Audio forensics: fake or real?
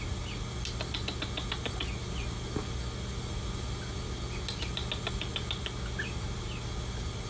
real